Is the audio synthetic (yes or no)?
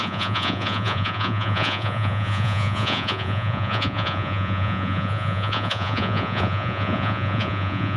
yes